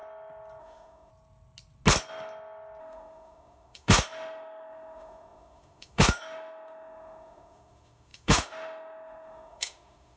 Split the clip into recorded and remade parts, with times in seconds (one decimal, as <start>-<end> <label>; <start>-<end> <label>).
0.0-0.6 recorded; 0.6-1.1 remade; 1.1-2.8 recorded; 2.8-10.2 remade